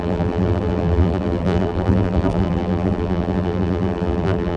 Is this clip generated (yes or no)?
yes